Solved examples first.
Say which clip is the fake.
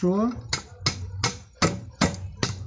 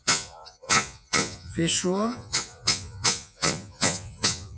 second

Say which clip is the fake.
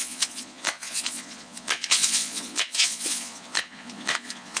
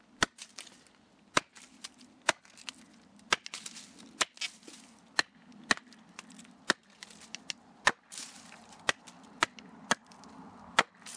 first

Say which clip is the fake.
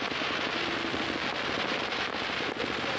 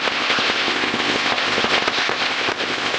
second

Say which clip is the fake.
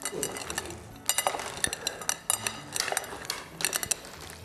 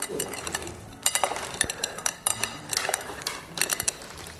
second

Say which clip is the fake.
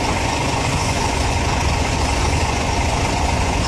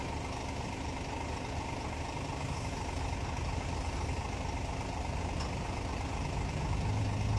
first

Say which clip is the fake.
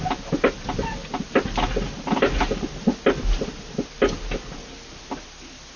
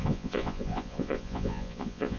second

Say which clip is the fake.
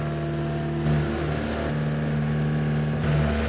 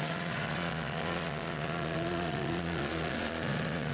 second